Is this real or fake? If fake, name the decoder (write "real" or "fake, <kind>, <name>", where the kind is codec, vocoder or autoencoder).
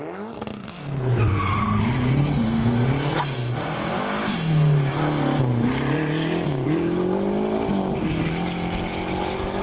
real